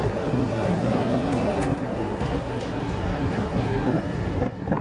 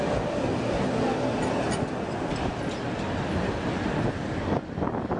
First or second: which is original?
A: second